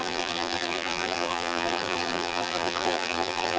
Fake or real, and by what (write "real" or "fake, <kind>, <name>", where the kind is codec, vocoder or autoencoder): fake, vocoder, BigVGAN v2